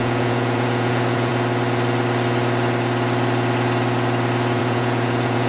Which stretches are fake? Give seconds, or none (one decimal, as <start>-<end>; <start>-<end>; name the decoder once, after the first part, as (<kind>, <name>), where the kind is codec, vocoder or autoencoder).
0.0-1.3 (vocoder, Vocos); 4.6-5.5